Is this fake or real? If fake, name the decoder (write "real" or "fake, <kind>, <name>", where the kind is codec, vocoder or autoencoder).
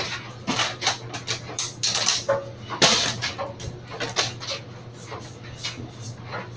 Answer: real